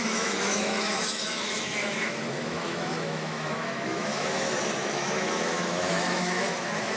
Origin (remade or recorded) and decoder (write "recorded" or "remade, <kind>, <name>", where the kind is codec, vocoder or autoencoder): remade, autoencoder, DAC-VAE